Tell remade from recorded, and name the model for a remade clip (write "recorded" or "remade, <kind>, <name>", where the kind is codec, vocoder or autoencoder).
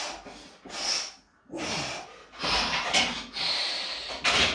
recorded